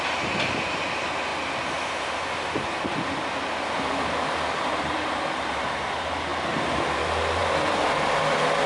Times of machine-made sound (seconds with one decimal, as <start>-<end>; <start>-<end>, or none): none